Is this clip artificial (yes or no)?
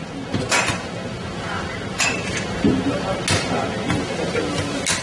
no